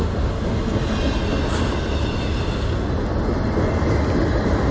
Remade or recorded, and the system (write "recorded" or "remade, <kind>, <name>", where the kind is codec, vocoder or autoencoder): recorded